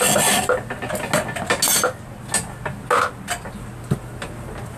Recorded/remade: recorded